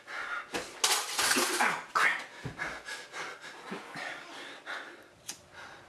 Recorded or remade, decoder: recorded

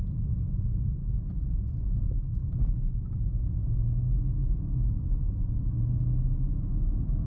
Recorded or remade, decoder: recorded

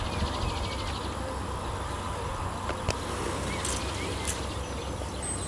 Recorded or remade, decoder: recorded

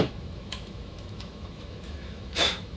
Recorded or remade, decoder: remade, autoencoder, DAC-VAE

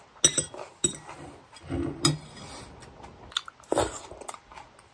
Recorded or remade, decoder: recorded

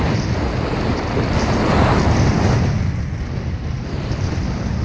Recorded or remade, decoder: recorded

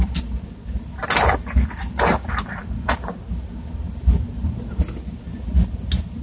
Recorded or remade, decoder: recorded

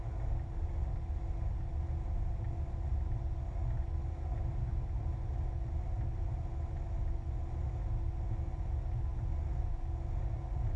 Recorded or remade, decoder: recorded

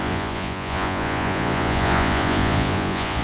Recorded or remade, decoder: remade, vocoder, Vocos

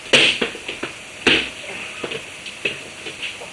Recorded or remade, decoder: recorded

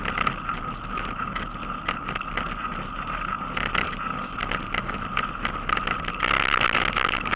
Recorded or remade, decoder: recorded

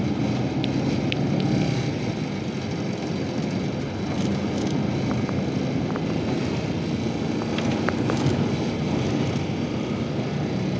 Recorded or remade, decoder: recorded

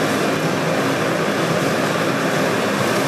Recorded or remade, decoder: recorded